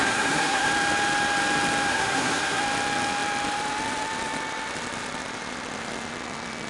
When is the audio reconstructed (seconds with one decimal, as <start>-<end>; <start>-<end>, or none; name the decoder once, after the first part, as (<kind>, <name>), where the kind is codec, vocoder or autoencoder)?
0.0-0.7 (codec, SNAC); 1.9-2.6